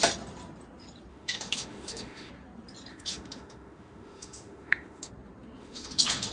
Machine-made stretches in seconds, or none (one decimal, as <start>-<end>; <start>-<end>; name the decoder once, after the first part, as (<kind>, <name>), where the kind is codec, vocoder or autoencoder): 1.1-2.3 (autoencoder, DAC-VAE); 2.9-5.1; 5.6-6.3